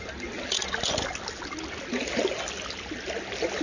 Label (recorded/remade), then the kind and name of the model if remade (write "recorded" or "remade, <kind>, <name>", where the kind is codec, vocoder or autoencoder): recorded